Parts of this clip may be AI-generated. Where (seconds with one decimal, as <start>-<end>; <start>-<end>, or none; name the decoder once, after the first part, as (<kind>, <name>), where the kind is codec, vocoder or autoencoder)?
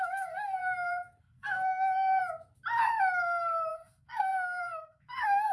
0.0-0.6 (codec, SNAC); 1.2-2.2; 3.7-5.5